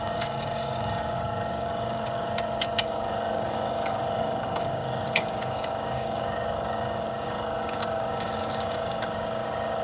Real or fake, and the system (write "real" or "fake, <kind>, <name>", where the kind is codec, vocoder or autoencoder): fake, codec, DAC